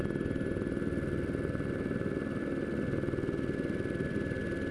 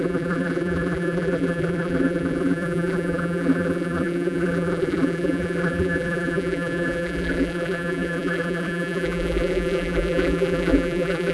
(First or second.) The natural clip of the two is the first